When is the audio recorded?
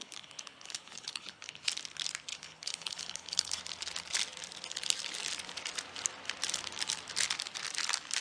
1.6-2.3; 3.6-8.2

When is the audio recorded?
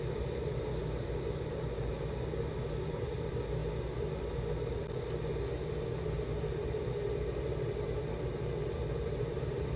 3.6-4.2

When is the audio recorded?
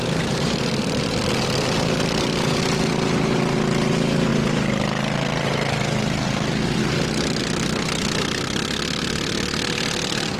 1.0-10.4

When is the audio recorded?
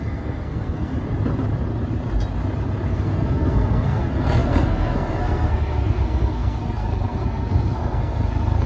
0.9-2.9